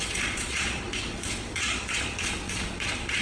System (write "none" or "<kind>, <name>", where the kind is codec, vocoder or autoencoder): vocoder, Vocos